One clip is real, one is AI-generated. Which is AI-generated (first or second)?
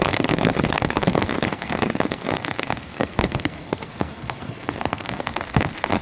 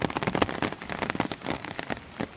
first